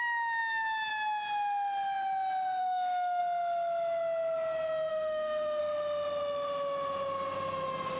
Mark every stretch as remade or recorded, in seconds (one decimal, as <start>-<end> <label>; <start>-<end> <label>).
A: 0.0-2.6 recorded; 2.6-3.2 remade; 3.2-4.9 recorded; 4.9-5.6 remade; 5.6-8.0 recorded